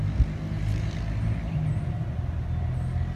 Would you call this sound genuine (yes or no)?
yes